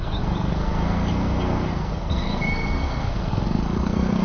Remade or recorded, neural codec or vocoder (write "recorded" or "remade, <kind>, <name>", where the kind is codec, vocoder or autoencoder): remade, codec, SNAC